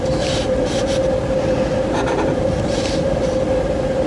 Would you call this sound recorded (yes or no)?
yes